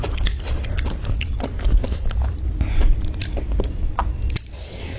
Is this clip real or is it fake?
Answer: real